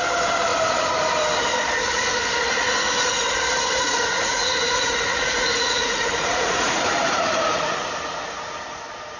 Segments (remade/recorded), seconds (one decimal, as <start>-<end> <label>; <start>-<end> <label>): 0.0-3.7 recorded; 3.7-7.9 remade; 7.9-9.2 recorded